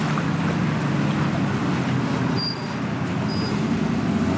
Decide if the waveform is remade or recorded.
recorded